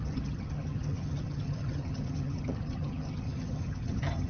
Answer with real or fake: fake